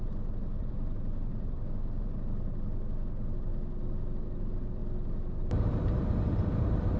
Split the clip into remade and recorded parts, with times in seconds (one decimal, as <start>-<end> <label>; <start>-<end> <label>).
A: 0.0-3.5 remade; 3.5-4.2 recorded; 4.2-4.8 remade; 4.8-5.4 recorded; 5.4-7.0 remade